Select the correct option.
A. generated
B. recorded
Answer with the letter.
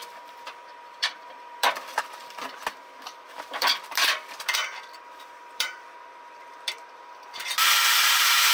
A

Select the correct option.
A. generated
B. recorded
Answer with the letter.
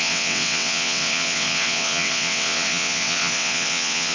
A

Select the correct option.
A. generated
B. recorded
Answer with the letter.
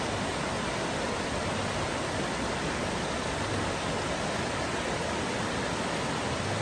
B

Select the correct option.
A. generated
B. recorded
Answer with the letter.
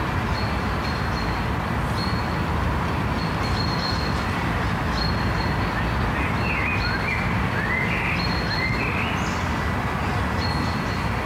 B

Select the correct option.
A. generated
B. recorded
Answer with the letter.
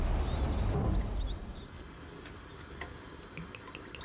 B